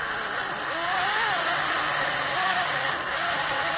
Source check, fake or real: real